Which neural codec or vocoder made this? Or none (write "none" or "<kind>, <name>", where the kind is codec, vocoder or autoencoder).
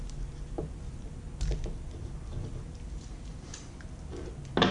none